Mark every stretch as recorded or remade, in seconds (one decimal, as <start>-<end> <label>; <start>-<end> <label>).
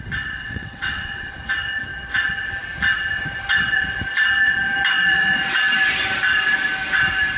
0.0-0.4 recorded; 0.4-1.5 remade; 1.5-5.1 recorded; 5.1-5.7 remade; 5.7-7.4 recorded